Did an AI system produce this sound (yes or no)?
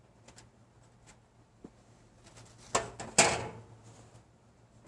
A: no